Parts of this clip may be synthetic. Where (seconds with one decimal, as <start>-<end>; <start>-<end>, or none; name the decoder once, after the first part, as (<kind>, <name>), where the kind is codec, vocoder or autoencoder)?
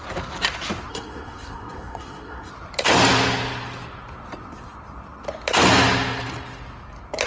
0.9-2.5 (codec, SNAC)